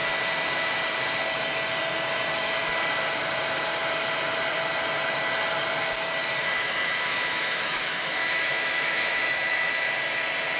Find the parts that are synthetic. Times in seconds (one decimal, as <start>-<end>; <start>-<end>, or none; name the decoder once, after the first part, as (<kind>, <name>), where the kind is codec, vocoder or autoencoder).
6.4-9.7 (autoencoder, DAC-VAE)